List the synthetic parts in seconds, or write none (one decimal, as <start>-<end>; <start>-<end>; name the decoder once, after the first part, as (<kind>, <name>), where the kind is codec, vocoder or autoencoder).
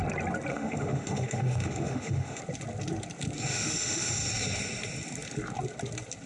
0.5-2.4 (autoencoder, DAC-VAE); 3.5-4.1